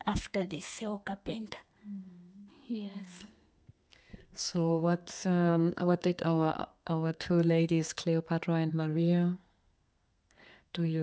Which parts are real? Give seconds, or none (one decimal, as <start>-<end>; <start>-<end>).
8.0-8.7